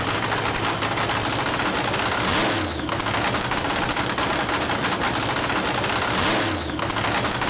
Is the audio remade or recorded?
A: recorded